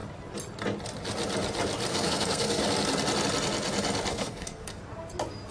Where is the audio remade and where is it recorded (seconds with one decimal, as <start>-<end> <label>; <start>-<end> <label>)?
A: 0.0-1.9 recorded; 1.9-2.6 remade; 2.6-4.1 recorded; 4.1-4.8 remade; 4.8-5.5 recorded